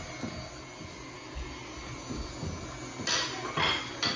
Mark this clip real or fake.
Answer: real